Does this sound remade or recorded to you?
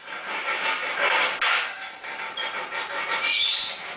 recorded